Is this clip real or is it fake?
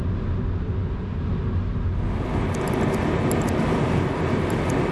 real